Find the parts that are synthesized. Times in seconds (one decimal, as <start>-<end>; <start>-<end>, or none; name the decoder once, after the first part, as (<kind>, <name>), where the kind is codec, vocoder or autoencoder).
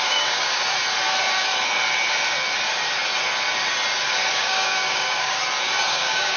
0.0-0.5 (codec, DAC); 4.3-5.4; 5.9-6.4